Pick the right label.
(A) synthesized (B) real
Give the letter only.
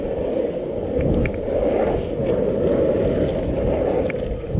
B